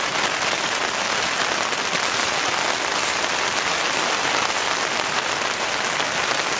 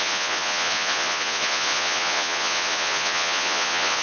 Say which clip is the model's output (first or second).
second